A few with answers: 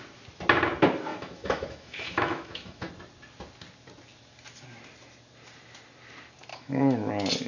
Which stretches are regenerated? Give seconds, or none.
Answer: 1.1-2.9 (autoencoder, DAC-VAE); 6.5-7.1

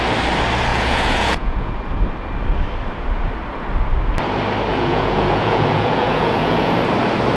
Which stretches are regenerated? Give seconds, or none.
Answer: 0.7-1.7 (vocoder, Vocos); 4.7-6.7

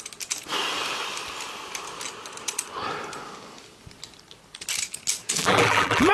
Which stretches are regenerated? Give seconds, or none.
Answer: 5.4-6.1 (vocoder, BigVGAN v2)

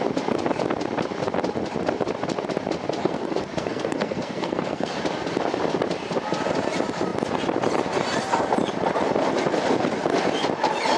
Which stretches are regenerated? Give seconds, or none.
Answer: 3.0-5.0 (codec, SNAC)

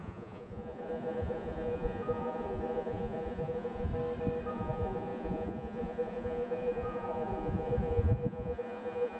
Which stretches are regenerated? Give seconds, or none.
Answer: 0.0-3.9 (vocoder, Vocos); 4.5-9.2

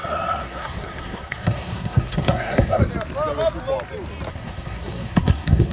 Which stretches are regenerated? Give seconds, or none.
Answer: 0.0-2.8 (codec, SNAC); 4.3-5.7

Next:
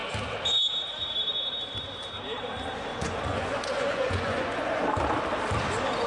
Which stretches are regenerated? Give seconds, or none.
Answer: 2.9-4.8 (vocoder, Vocos)